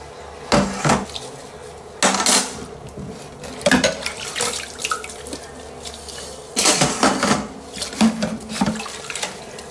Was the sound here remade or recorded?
recorded